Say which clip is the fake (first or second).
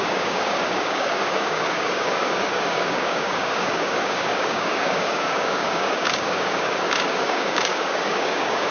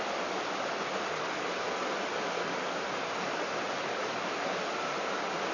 first